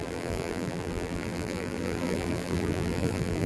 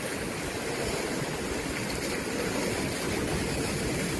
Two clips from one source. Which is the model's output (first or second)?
first